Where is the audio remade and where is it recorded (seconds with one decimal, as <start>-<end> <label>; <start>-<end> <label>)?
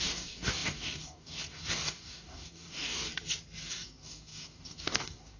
0.0-3.1 remade; 3.1-3.7 recorded; 3.7-5.4 remade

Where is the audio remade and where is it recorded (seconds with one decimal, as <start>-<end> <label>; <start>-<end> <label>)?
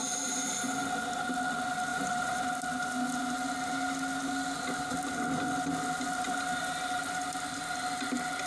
0.0-1.9 recorded; 1.9-2.5 remade; 2.5-8.5 recorded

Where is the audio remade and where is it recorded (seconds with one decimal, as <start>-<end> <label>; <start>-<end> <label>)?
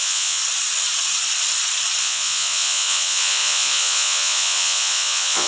0.0-0.4 remade; 0.4-2.0 recorded; 2.0-5.5 remade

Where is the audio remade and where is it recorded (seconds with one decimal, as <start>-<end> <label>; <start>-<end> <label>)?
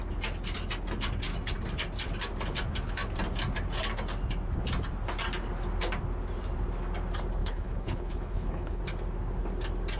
0.0-7.4 recorded; 7.4-8.8 remade; 8.8-10.0 recorded